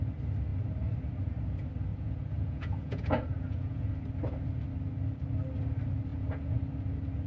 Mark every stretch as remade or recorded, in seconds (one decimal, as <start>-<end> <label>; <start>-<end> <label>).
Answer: 0.0-1.9 recorded; 1.9-3.9 remade; 3.9-6.1 recorded; 6.1-6.6 remade; 6.6-7.3 recorded